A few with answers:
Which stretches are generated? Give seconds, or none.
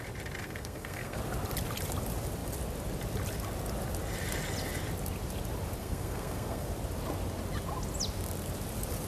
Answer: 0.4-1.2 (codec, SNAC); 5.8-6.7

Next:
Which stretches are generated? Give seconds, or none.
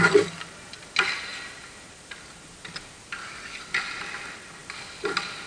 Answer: none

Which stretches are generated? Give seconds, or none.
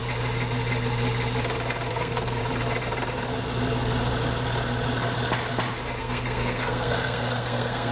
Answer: 1.9-2.4 (codec, SNAC); 6.0-7.9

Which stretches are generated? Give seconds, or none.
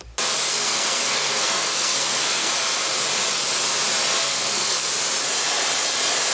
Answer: 0.5-2.5 (codec, SNAC); 4.2-4.9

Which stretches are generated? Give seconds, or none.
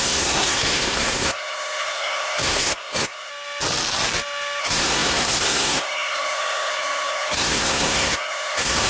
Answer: 0.0-3.3 (codec, SNAC); 4.6-8.9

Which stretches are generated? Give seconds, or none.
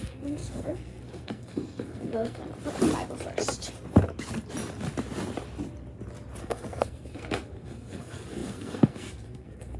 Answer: 0.0-2.4 (codec, SNAC); 6.4-9.8